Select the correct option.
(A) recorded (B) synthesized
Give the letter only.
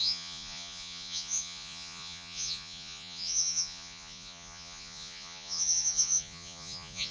B